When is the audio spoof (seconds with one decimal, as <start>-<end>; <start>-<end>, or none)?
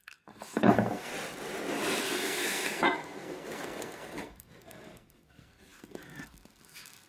0.0-1.1; 2.0-7.1